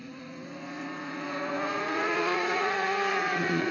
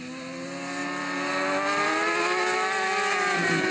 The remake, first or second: first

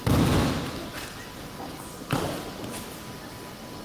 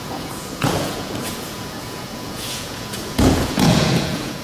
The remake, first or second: second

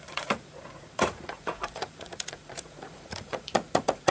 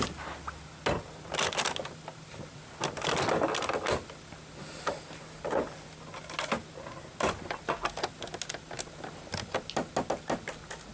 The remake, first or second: first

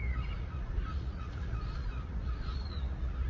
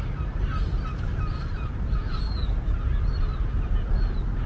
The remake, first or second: first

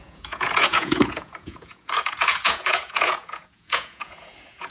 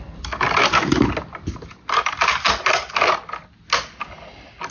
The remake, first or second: first